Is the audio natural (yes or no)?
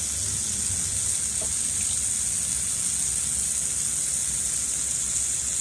yes